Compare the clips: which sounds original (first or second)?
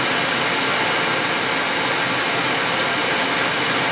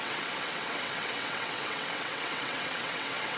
first